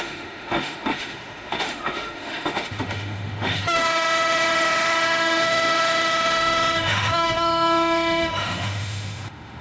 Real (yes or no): no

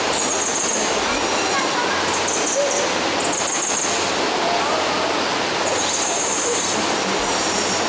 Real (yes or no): yes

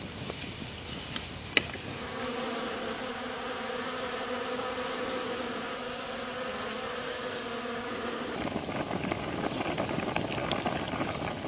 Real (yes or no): yes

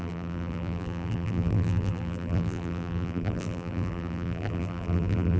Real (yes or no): no